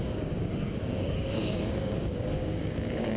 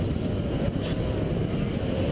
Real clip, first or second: second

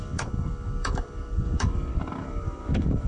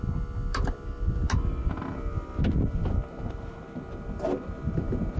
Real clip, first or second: second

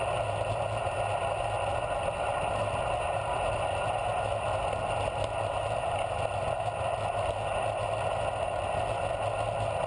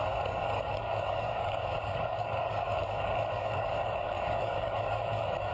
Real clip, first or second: first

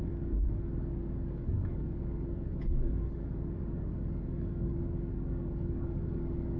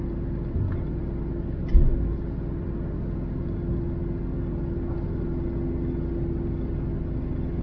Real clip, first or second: second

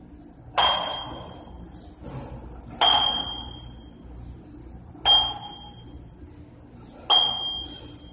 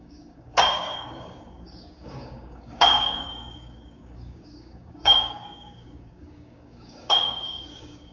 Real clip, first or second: first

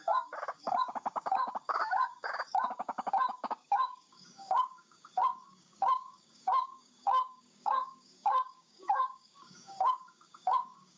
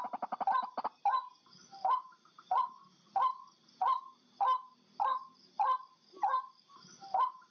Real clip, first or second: second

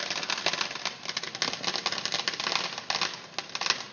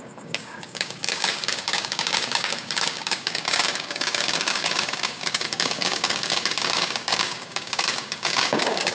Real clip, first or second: first